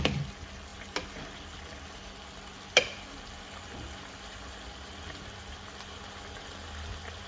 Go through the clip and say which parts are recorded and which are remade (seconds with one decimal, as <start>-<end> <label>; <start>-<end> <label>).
0.0-7.3 recorded